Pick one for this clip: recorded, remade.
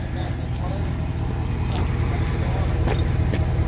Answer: recorded